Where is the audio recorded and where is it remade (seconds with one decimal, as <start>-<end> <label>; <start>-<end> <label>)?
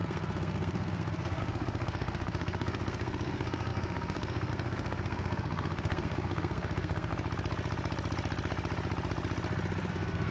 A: 0.0-7.1 remade; 7.1-9.9 recorded; 9.9-10.3 remade